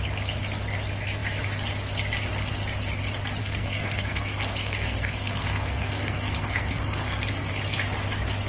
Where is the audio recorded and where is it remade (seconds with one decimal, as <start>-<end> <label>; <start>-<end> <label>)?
0.0-3.4 recorded; 3.4-7.5 remade; 7.5-8.5 recorded